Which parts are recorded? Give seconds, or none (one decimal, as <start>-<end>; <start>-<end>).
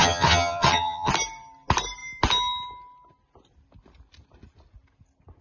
1.1-5.4